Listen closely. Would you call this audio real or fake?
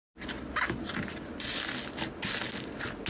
real